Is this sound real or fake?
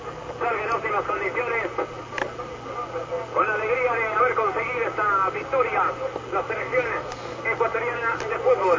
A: real